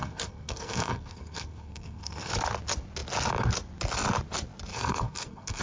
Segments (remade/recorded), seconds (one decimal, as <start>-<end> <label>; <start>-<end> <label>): 0.0-2.3 remade; 2.3-4.7 recorded; 4.7-5.6 remade